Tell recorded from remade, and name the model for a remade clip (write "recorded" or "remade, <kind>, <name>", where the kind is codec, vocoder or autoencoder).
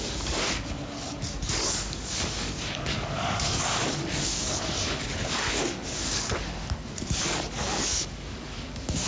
remade, codec, DAC